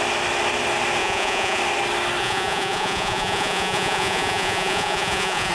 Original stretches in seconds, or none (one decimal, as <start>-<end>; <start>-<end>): 0.0-1.0; 1.6-2.2